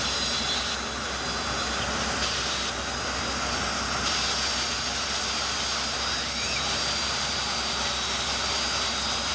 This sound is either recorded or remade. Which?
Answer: recorded